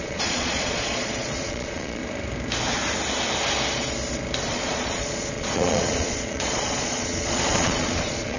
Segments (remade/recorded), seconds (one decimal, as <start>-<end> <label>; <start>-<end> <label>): 0.0-2.0 remade; 2.0-4.5 recorded; 4.5-8.4 remade